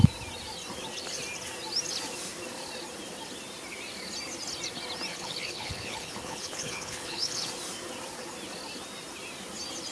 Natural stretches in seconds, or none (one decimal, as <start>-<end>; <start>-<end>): 0.0-5.1; 7.5-9.9